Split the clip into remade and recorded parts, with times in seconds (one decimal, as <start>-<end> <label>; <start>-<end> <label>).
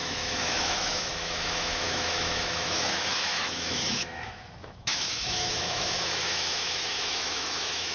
0.0-7.9 remade